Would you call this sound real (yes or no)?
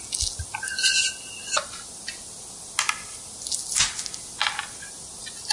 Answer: yes